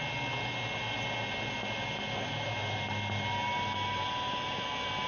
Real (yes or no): yes